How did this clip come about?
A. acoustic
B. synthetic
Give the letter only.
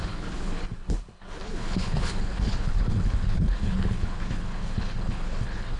B